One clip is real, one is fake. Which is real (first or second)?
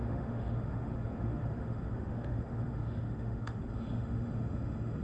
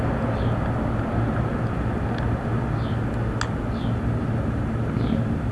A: second